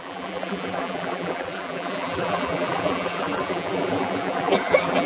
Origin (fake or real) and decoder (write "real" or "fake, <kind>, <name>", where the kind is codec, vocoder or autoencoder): fake, vocoder, BigVGAN v2